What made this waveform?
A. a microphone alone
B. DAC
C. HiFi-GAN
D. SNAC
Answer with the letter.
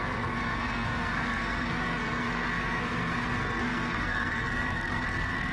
D